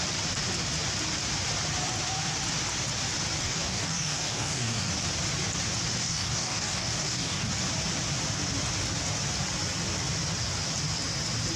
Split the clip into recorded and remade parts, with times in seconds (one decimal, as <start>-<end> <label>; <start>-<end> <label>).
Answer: 0.0-3.4 recorded; 3.4-4.9 remade; 4.9-6.0 recorded; 6.0-7.5 remade; 7.5-11.6 recorded